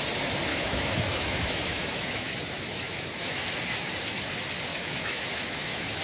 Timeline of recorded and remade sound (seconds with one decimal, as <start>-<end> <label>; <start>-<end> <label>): 0.0-0.5 recorded; 0.5-3.4 remade; 3.4-4.7 recorded; 4.7-6.0 remade